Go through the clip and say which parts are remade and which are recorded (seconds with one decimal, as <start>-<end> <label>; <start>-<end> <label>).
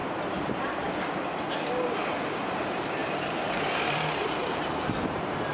0.0-1.9 recorded; 1.9-5.5 remade